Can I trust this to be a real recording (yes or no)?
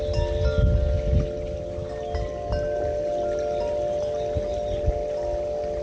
yes